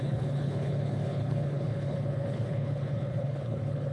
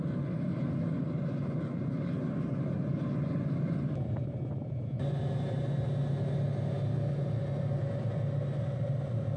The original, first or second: second